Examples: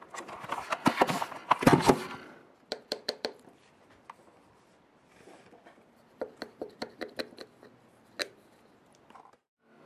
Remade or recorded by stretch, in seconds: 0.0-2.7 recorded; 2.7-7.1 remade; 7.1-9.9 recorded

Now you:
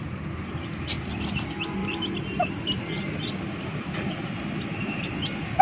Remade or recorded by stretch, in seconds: 0.0-1.8 recorded; 1.8-2.5 remade; 2.5-5.6 recorded

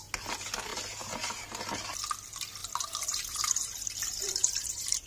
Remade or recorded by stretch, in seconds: 0.0-0.7 recorded; 0.7-1.6 remade; 1.6-2.6 recorded; 2.6-5.1 remade

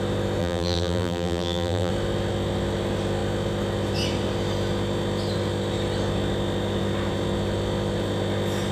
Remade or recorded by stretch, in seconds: 0.0-0.4 recorded; 0.4-1.9 remade; 1.9-8.7 recorded

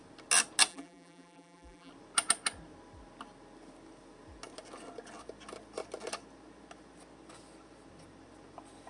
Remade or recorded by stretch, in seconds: 0.0-0.7 recorded; 0.7-1.9 remade; 1.9-8.9 recorded

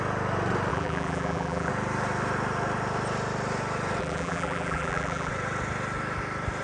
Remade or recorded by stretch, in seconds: 0.0-0.7 recorded; 0.7-1.7 remade; 1.7-4.0 recorded; 4.0-5.3 remade; 5.3-6.6 recorded

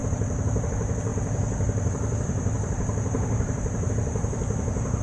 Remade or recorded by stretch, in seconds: 0.0-0.6 remade; 0.6-1.1 recorded; 1.1-3.9 remade; 3.9-5.0 recorded